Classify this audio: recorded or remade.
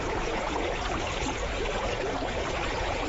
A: remade